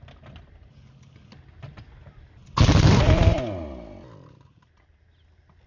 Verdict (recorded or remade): recorded